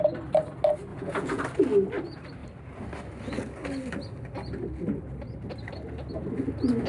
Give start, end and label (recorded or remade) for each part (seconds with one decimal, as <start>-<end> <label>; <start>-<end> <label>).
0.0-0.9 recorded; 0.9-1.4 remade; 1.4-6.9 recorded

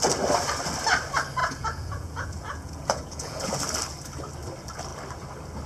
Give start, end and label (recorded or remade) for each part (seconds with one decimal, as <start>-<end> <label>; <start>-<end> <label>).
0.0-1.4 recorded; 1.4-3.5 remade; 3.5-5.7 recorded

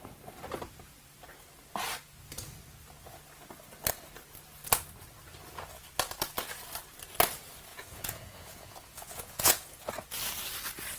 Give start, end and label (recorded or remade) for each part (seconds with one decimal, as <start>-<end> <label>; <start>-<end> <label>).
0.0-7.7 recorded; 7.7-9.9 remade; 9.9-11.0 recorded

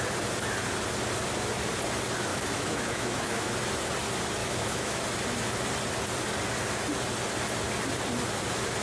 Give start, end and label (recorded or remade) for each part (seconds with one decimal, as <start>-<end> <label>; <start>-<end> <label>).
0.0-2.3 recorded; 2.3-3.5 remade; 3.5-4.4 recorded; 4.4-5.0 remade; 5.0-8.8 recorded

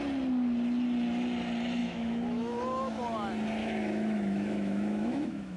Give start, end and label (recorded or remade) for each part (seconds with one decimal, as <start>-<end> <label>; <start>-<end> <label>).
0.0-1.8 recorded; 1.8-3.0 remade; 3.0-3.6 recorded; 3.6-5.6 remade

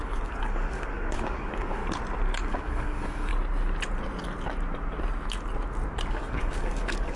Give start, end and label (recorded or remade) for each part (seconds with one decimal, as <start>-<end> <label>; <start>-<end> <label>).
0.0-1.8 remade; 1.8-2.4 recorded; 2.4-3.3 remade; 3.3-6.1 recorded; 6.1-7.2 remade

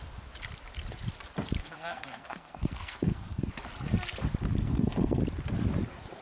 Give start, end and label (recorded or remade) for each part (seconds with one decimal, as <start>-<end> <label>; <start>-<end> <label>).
0.0-1.6 recorded; 1.6-3.5 remade; 3.5-4.6 recorded; 4.6-5.2 remade; 5.2-6.2 recorded